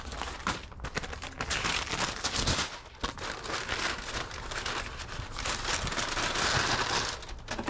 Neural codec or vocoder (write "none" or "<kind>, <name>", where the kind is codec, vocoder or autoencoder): none